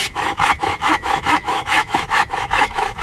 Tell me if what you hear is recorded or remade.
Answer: remade